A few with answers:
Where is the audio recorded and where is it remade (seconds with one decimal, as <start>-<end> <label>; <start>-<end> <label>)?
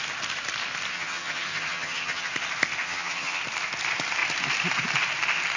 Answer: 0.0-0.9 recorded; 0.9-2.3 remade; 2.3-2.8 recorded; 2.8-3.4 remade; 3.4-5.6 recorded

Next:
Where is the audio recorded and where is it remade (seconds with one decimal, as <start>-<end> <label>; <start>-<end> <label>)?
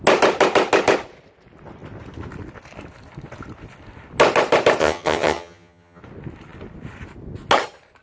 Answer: 0.0-4.8 recorded; 4.8-6.0 remade; 6.0-8.0 recorded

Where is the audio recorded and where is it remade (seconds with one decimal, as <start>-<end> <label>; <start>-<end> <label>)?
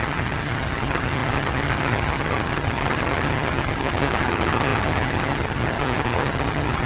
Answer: 0.0-6.8 remade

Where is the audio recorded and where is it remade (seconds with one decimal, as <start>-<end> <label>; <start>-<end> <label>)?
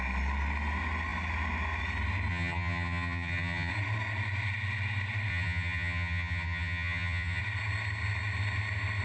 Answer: 0.0-2.3 recorded; 2.3-3.7 remade; 3.7-5.3 recorded; 5.3-7.4 remade; 7.4-9.0 recorded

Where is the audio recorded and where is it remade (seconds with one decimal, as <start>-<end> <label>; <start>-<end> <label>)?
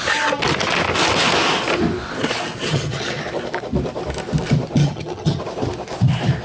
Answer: 0.0-2.7 recorded; 2.7-3.2 remade; 3.2-4.8 recorded; 4.8-5.4 remade; 5.4-6.4 recorded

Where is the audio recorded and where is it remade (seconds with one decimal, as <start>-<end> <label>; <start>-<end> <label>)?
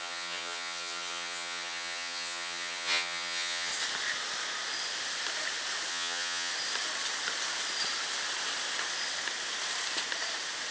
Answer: 0.0-3.7 remade; 3.7-5.9 recorded; 5.9-6.5 remade; 6.5-10.7 recorded